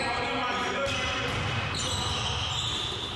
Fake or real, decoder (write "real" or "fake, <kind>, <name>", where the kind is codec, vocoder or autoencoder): real